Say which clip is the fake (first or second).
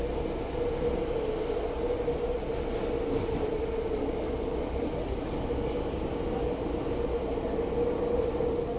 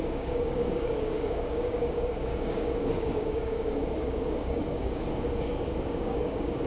second